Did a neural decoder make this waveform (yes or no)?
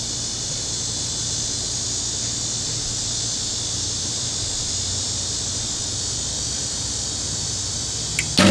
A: no